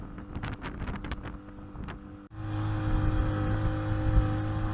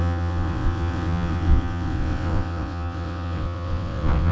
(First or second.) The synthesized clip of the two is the second